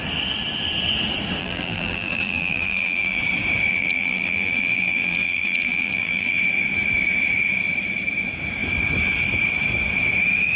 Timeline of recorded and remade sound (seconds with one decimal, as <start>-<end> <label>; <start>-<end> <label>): 0.0-1.4 recorded; 1.4-3.2 remade; 3.2-3.7 recorded; 3.7-6.4 remade; 6.4-10.6 recorded